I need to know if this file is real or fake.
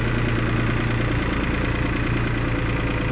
real